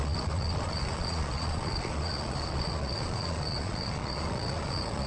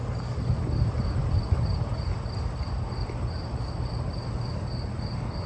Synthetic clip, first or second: first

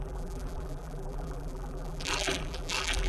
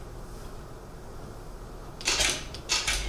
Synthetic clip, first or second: first